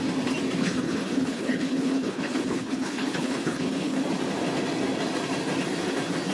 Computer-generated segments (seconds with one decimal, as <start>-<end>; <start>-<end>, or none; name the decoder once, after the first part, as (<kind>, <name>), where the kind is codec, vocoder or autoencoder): 0.6-4.0 (codec, HILCodec)